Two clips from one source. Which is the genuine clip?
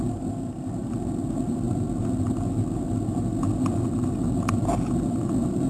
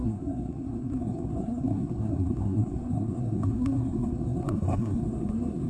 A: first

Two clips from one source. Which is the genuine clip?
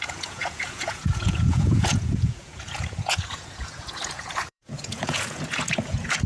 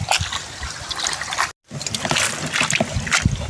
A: second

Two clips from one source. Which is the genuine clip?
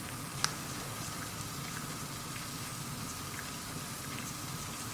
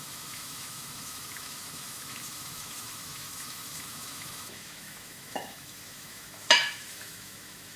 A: first